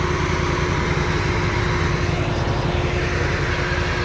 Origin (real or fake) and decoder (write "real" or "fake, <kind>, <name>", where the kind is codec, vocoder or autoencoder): real